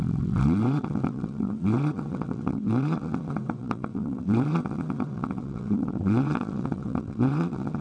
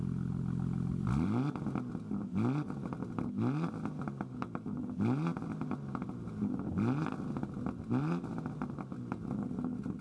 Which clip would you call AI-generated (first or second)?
first